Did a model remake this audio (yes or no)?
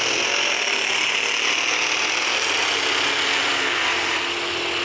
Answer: no